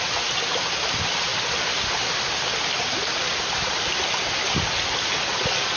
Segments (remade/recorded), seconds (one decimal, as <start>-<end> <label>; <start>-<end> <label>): 0.0-5.8 recorded